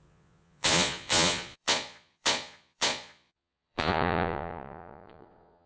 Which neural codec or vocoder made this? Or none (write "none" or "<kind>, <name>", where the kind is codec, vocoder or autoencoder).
vocoder, Vocos